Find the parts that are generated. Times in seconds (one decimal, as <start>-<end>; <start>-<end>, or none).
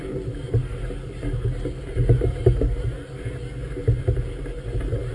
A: none